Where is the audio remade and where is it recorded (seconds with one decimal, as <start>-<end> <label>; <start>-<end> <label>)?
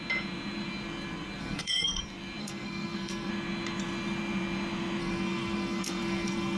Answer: 0.0-1.4 recorded; 1.4-2.0 remade; 2.0-2.4 recorded; 2.4-3.3 remade; 3.3-5.0 recorded; 5.0-6.6 remade